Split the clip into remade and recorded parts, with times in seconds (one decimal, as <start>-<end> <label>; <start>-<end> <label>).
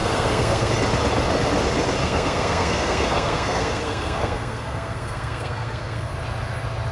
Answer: 0.0-0.7 remade; 0.7-2.0 recorded; 2.0-6.1 remade; 6.1-6.9 recorded